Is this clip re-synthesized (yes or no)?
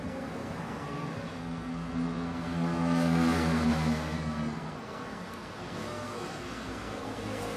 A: yes